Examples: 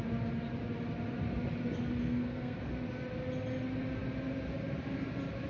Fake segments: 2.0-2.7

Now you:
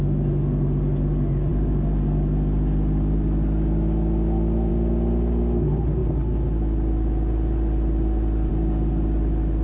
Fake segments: none

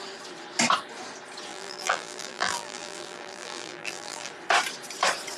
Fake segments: 1.5-4.3